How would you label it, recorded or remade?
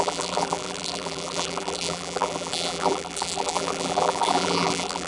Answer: remade